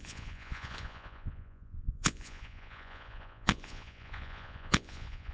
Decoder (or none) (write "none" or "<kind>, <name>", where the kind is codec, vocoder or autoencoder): vocoder, Vocos